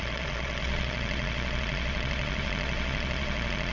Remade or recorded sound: remade